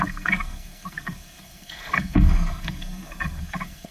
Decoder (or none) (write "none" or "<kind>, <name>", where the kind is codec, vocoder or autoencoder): codec, SNAC